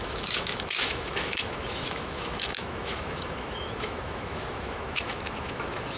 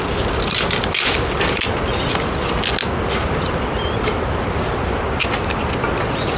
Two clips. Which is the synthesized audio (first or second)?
first